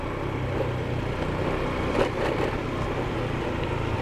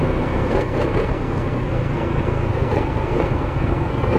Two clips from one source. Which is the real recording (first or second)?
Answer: first